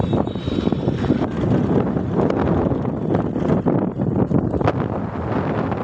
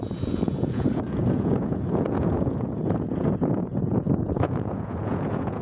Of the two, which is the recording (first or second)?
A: first